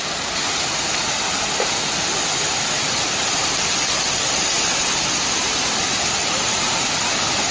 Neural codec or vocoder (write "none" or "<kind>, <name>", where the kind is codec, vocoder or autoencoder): none